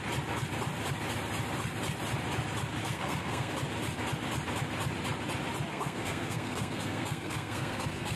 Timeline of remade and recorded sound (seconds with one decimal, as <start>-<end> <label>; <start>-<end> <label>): 0.0-2.8 recorded; 2.8-3.5 remade; 3.5-5.7 recorded; 5.7-8.2 remade